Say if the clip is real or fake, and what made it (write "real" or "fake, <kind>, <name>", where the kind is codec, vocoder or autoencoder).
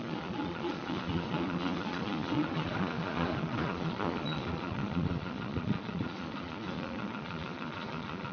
fake, vocoder, Vocos